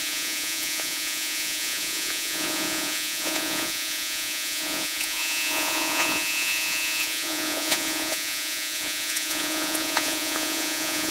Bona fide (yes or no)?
no